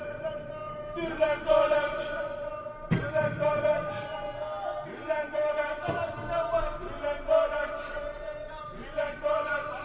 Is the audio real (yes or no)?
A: yes